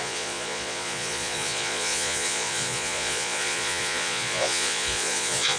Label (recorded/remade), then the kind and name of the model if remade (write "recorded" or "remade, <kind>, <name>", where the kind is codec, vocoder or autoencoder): remade, vocoder, Vocos